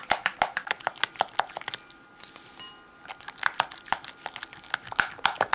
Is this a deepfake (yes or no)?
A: no